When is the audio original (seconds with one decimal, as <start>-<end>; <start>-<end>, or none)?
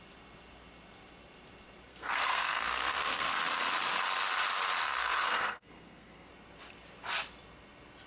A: 0.0-1.9; 3.4-5.0; 6.3-8.1